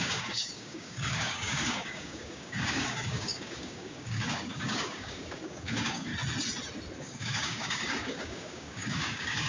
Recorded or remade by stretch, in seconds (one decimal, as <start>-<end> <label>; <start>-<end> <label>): 0.0-6.1 remade; 6.1-7.0 recorded; 7.0-9.5 remade